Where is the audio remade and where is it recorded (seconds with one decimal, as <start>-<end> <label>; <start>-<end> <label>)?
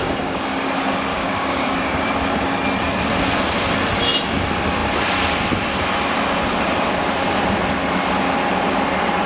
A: 0.0-0.7 remade; 0.7-1.1 recorded; 1.1-2.0 remade; 2.0-9.3 recorded